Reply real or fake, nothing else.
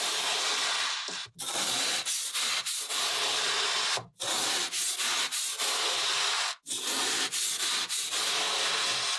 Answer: real